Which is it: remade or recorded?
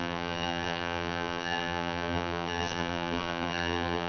remade